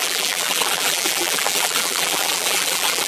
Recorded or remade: remade